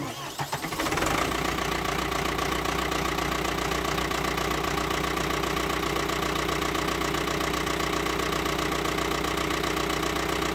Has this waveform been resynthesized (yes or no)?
no